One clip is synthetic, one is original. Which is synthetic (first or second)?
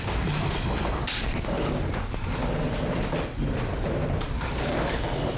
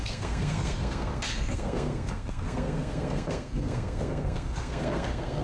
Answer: second